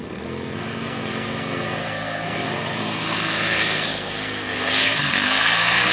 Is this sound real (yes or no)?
no